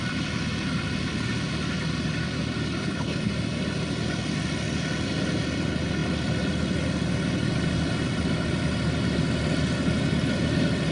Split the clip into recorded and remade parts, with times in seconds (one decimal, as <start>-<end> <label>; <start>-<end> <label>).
0.0-2.8 recorded; 2.8-3.3 remade; 3.3-10.9 recorded